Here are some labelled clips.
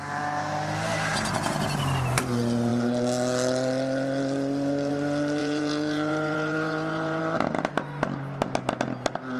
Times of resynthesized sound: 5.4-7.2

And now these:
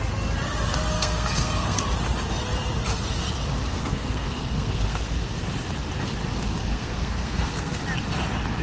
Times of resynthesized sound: 0.9-1.8; 3.7-5.4; 6.6-7.8

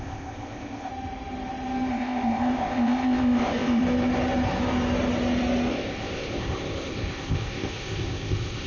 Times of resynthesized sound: 0.0-0.9; 1.9-3.8; 5.7-8.7

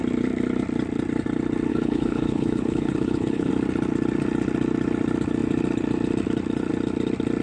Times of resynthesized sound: 1.7-3.5

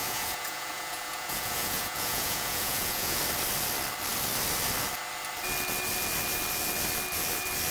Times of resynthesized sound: 0.0-3.2